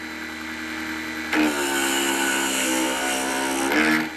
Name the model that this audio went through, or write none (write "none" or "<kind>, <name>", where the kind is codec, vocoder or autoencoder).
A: none